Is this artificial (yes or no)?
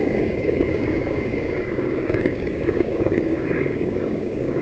yes